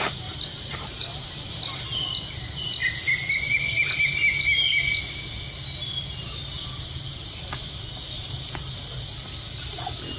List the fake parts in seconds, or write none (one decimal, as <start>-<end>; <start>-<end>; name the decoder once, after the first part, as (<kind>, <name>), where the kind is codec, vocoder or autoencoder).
none